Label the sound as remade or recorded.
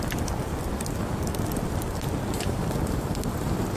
recorded